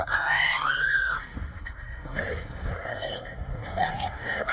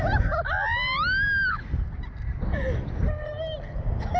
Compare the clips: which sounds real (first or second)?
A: second